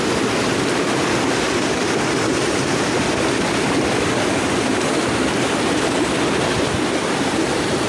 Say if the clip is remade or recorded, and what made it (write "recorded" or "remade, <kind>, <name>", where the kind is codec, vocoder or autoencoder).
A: recorded